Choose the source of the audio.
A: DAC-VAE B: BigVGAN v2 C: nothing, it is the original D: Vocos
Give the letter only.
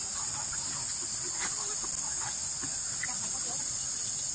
C